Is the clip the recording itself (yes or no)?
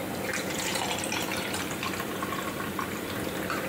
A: no